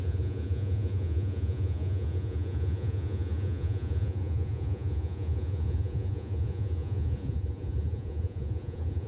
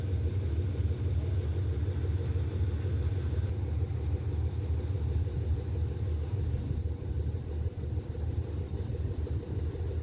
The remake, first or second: first